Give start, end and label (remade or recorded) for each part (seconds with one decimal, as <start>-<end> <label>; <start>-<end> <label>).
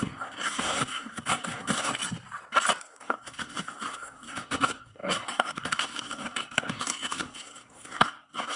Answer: 0.0-1.9 remade; 1.9-2.8 recorded; 2.8-8.6 remade